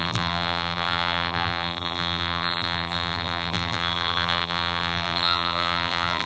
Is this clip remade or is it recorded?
remade